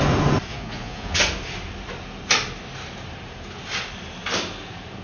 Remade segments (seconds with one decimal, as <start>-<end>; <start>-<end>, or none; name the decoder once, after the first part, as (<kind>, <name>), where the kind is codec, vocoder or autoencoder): 0.5-1.2 (vocoder, Vocos)